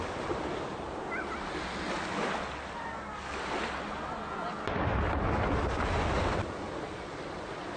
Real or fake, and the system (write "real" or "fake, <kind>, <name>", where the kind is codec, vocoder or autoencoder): real